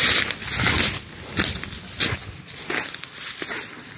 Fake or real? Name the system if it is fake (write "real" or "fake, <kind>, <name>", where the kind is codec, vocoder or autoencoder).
real